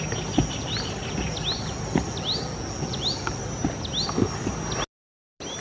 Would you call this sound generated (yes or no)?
no